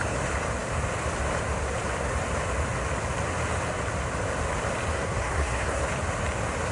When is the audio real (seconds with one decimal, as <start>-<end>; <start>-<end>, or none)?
0.0-4.9; 5.8-6.7